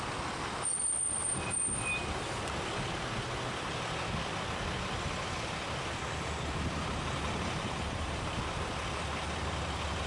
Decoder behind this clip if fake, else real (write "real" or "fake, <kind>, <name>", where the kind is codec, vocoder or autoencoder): real